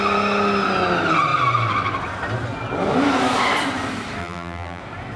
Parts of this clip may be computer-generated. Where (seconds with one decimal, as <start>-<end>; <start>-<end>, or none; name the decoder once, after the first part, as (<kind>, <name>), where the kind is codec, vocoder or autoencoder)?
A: 4.2-4.8 (vocoder, BigVGAN v2)